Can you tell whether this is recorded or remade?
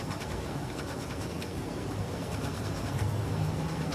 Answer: remade